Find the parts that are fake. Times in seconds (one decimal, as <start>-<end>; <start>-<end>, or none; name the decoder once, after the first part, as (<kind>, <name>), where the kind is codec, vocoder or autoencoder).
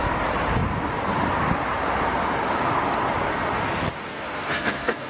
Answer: 4.1-5.1 (codec, SNAC)